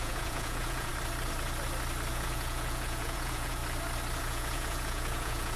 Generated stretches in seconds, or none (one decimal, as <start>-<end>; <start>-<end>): 0.0-0.9; 2.1-3.6; 4.2-5.6